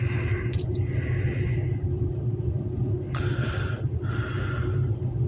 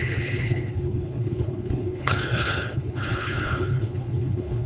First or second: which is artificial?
second